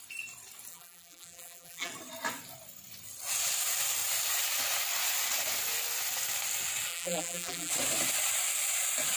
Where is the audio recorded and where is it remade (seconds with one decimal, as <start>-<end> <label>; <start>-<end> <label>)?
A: 0.0-0.7 recorded; 0.7-1.9 remade; 1.9-6.9 recorded; 6.9-7.7 remade; 7.7-9.2 recorded